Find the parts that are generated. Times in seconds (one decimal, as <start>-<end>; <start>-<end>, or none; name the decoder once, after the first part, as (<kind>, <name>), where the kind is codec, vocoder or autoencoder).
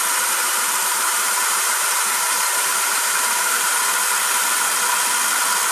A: 0.4-3.8 (vocoder, BigVGAN v2)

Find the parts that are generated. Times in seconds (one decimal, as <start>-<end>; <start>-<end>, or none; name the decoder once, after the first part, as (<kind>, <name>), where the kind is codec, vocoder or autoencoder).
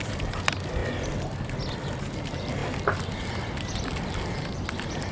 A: 0.0-0.8 (vocoder, BigVGAN v2); 2.0-5.1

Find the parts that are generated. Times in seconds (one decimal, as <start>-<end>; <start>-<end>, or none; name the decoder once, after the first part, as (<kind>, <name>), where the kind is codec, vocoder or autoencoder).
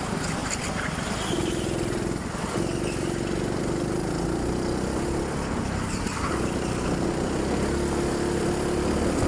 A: none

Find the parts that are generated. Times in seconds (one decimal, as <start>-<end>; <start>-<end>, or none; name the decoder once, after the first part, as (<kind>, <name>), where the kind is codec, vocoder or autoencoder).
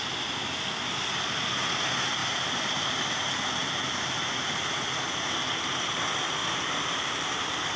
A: 2.2-3.0 (vocoder, BigVGAN v2); 3.6-4.6; 6.4-7.8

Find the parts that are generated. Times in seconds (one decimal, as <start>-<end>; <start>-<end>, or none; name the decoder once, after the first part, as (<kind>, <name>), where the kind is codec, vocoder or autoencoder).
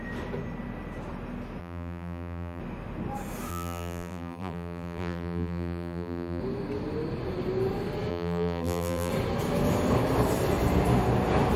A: 1.6-2.6 (vocoder, BigVGAN v2); 3.5-6.4; 8.1-9.1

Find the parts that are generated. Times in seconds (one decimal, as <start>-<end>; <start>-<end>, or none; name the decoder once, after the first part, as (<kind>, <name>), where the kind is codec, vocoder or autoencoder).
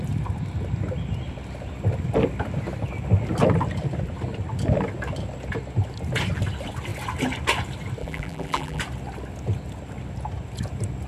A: 8.0-8.8 (vocoder, BigVGAN v2)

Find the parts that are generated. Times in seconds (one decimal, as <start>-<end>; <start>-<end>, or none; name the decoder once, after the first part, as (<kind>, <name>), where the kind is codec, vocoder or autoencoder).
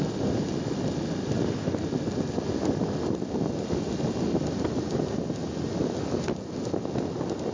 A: none